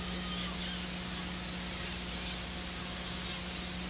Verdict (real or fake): real